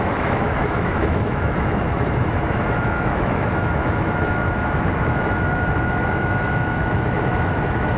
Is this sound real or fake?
fake